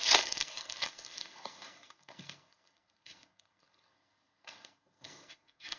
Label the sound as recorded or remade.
remade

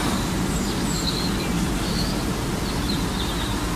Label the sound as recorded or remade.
recorded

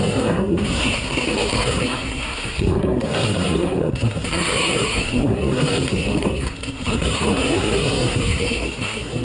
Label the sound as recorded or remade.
remade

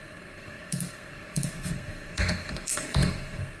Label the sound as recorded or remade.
remade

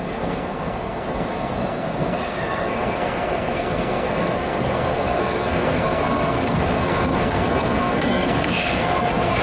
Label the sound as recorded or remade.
remade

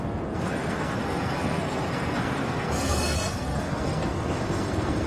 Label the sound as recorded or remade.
remade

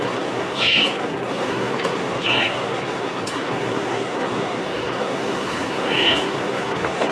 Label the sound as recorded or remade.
remade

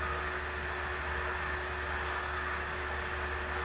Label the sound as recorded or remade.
recorded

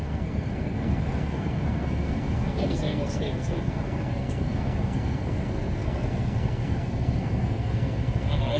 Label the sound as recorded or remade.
remade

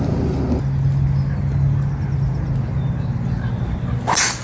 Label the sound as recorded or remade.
recorded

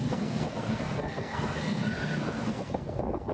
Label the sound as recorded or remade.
remade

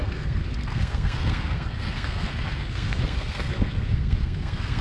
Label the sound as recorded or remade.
remade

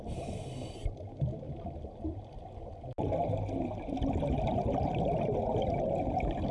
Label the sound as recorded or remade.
recorded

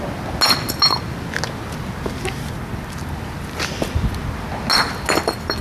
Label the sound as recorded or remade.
recorded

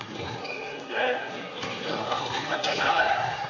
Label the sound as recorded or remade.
remade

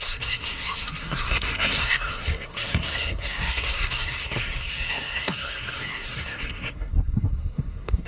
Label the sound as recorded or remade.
remade